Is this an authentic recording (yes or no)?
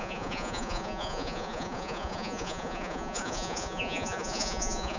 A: no